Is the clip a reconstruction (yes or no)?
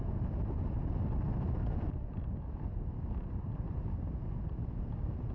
no